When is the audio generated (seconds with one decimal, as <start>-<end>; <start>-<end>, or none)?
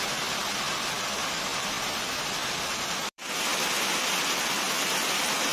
1.2-4.5